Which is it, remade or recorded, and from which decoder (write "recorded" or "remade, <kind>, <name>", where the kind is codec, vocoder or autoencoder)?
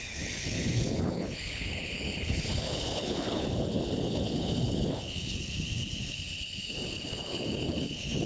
remade, codec, HILCodec